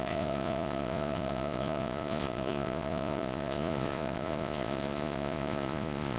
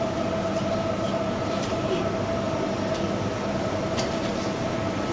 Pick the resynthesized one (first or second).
first